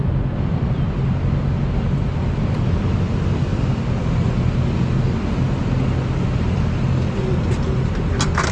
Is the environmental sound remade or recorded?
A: recorded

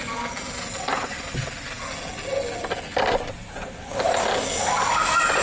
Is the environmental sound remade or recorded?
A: recorded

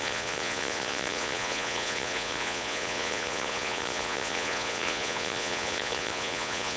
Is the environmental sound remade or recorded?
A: remade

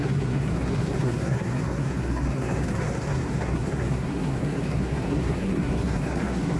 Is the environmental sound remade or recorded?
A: remade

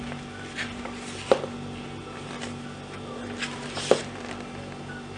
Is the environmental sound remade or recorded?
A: recorded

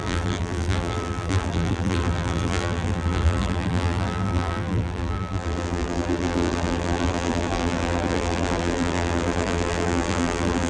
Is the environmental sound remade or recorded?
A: remade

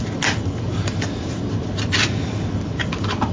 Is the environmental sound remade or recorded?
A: recorded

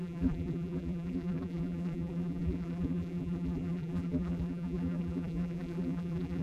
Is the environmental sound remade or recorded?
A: remade